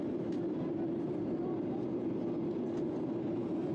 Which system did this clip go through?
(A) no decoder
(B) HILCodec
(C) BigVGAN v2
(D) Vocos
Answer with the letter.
A